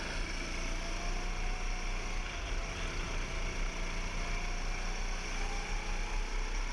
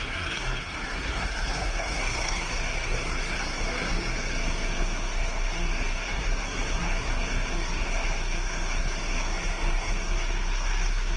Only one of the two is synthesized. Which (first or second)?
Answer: second